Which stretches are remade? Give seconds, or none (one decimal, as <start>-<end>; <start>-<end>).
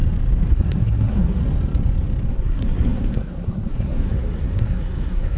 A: 0.5-1.4; 2.3-5.4